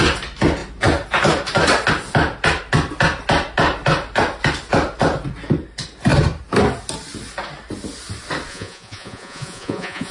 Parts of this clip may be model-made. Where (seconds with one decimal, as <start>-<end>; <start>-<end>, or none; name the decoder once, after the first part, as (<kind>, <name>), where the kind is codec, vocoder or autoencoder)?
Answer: 8.5-10.1 (vocoder, Vocos)